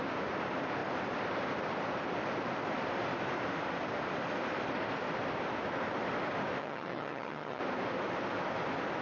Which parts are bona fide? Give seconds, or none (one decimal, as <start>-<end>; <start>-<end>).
0.0-6.6; 7.6-9.0